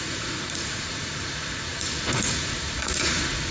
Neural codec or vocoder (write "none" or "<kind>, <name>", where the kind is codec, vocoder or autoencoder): vocoder, Vocos